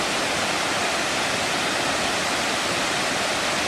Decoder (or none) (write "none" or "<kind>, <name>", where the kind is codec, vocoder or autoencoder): none